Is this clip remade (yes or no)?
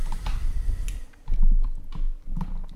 no